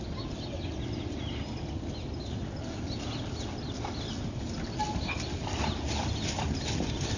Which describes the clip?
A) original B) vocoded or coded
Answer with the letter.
A